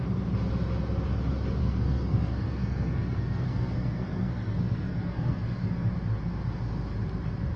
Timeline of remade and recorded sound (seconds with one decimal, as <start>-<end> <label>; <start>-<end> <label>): 0.0-1.6 recorded; 1.6-5.9 remade; 5.9-7.6 recorded